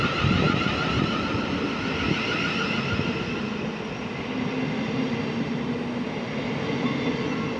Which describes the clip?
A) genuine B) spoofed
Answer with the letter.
A